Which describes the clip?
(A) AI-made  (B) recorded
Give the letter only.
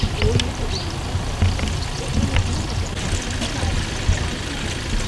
B